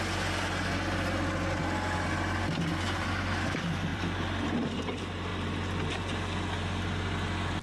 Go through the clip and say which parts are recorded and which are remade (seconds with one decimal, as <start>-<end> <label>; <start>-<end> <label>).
0.0-3.9 recorded; 3.9-4.8 remade; 4.8-7.6 recorded